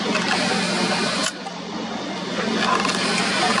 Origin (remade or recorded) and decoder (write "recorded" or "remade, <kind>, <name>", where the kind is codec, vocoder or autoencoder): recorded